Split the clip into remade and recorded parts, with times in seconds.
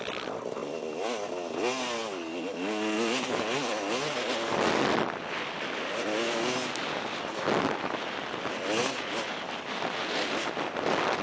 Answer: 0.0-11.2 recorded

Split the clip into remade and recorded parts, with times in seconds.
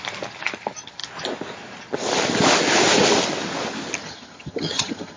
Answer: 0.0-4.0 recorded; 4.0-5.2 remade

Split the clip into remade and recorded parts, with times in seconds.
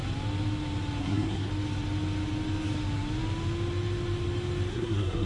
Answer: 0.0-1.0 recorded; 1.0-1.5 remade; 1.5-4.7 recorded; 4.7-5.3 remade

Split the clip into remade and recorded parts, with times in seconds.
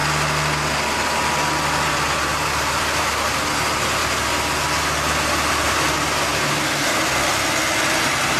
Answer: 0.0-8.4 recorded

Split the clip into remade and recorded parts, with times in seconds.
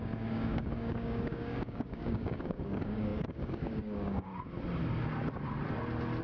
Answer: 0.0-4.3 remade; 4.3-6.2 recorded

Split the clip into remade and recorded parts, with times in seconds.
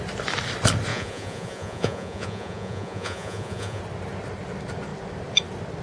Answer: 0.0-0.9 recorded; 0.9-3.8 remade; 3.8-5.8 recorded